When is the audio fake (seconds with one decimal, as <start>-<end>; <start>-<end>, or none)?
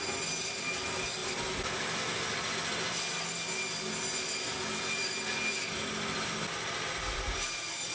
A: none